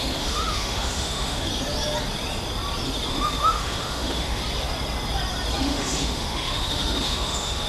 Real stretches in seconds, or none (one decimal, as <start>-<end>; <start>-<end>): 1.5-3.1; 4.4-5.6